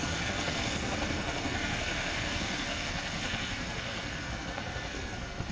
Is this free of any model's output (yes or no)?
no